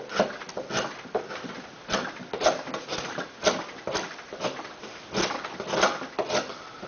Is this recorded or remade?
recorded